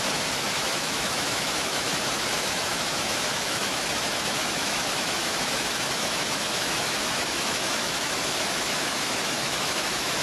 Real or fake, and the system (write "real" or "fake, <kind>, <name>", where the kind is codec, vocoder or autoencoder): fake, autoencoder, DAC-VAE